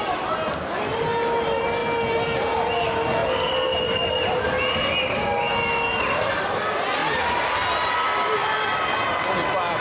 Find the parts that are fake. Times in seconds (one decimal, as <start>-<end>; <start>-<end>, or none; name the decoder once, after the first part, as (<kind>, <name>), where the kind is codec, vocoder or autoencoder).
3.2-4.0 (vocoder, BigVGAN v2)